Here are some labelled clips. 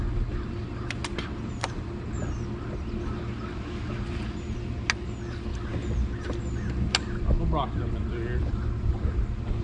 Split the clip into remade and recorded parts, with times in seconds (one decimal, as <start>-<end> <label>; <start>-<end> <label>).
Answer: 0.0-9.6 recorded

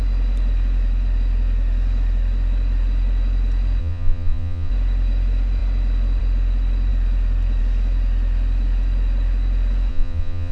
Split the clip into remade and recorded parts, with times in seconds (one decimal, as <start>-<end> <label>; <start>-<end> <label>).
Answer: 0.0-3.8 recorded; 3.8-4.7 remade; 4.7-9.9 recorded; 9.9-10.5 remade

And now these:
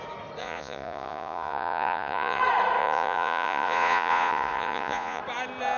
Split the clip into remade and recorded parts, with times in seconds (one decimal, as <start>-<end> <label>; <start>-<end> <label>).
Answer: 0.0-0.4 recorded; 0.4-2.4 remade; 2.4-2.8 recorded; 2.8-5.2 remade; 5.2-5.8 recorded